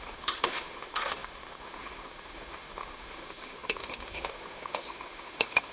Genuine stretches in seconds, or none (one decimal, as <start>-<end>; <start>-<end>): none